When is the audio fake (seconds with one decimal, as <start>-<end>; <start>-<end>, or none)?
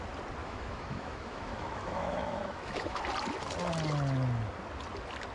0.4-3.0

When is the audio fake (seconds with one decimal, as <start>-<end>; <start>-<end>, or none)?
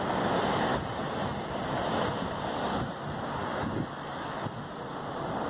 0.7-1.5; 3.4-4.7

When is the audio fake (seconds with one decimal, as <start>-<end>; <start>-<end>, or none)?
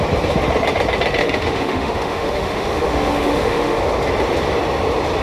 1.2-3.8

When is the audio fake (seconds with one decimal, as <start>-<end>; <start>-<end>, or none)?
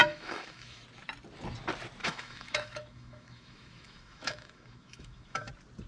0.0-0.8; 2.0-5.5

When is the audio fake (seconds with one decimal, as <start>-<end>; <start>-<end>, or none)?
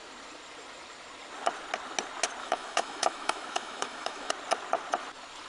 2.4-4.3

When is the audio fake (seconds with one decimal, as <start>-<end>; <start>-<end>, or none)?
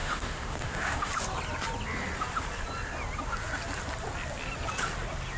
0.0-1.1